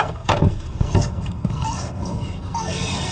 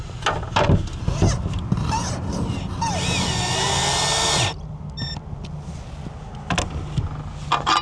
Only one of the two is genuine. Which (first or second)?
second